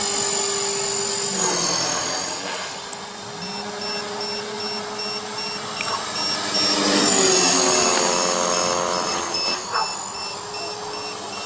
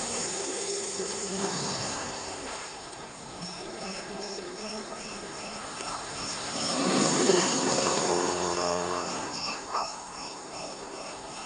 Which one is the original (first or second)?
first